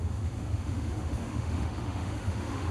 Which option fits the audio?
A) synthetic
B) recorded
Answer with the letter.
A